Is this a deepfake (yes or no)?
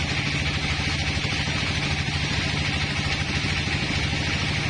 no